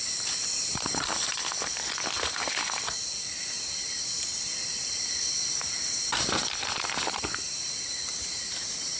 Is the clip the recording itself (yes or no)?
no